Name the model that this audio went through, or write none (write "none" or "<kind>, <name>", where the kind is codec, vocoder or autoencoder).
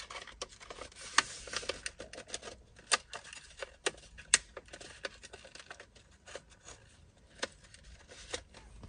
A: none